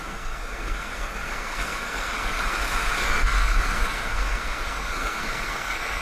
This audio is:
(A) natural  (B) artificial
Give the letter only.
B